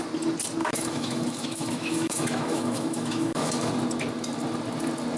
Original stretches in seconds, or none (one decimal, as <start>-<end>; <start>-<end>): 0.0-0.6; 3.7-5.2